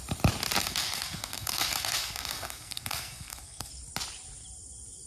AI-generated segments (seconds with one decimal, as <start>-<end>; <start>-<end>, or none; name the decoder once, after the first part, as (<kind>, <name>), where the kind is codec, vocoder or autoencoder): 0.6-3.7 (codec, SNAC)

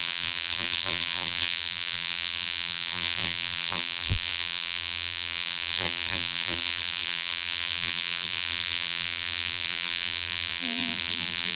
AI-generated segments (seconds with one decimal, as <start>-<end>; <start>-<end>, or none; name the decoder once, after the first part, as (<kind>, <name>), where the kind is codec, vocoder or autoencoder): 0.0-11.5 (vocoder, BigVGAN v2)

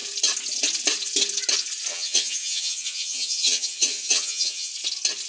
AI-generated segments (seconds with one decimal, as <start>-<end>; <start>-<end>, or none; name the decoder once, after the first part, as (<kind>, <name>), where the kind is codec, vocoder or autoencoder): 1.9-4.7 (vocoder, HiFi-GAN)

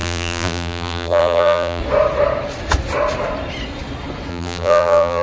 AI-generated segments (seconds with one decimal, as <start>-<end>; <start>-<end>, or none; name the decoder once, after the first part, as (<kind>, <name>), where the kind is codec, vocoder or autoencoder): 0.0-1.8 (vocoder, BigVGAN v2); 4.3-5.2

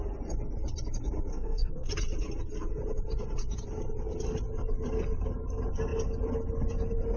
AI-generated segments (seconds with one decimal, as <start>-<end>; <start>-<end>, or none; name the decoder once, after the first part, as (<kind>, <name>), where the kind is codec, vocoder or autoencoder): 1.3-1.9 (codec, SNAC)

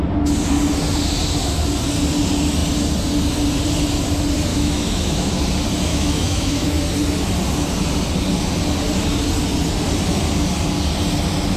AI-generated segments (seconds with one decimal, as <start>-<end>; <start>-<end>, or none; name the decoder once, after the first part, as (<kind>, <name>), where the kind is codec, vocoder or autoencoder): 4.5-5.3 (autoencoder, DAC-VAE); 5.9-6.8

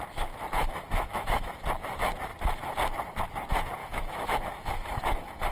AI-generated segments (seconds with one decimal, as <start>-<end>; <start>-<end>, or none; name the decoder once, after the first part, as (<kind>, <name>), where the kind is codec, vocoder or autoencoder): 0.6-1.6 (autoencoder, DAC-VAE); 3.8-5.5